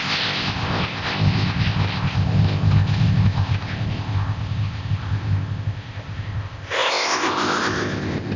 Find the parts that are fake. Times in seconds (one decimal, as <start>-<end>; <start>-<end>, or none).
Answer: 0.0-8.4